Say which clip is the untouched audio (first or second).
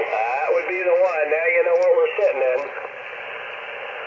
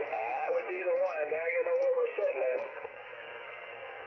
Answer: first